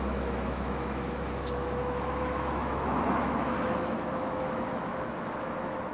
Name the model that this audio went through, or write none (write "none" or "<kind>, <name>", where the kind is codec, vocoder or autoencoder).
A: autoencoder, DAC-VAE